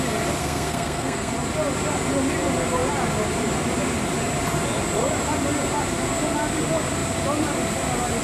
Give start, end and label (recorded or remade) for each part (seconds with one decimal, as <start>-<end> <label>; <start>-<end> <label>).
0.0-0.4 recorded; 0.4-1.3 remade; 1.3-8.2 recorded